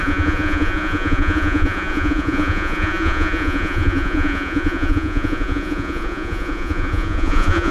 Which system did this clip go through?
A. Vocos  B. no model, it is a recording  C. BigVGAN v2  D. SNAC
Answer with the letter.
A